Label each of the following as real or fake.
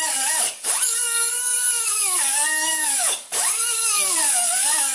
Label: fake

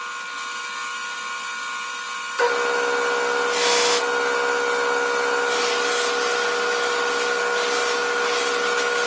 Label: real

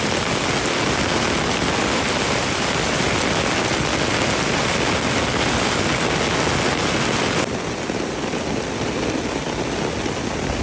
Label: real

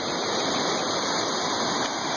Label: fake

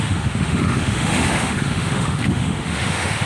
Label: fake